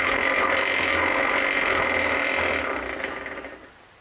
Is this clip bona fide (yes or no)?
yes